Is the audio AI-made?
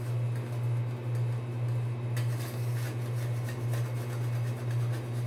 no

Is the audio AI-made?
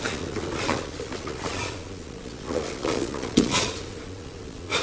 yes